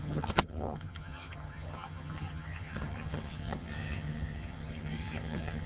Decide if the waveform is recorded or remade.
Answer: remade